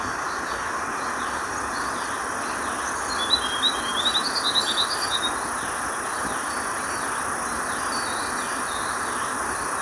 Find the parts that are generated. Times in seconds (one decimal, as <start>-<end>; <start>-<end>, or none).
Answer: none